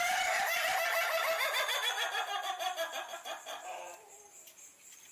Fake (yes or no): yes